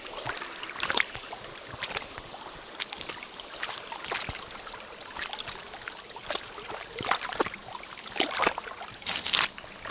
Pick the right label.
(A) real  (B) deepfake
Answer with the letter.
A